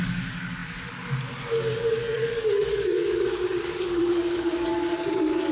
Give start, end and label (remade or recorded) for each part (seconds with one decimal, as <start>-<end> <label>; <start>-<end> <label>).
0.0-5.5 remade